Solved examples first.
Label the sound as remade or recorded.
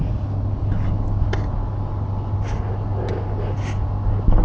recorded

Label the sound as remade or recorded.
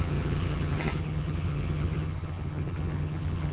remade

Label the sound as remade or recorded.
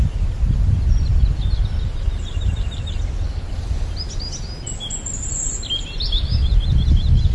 recorded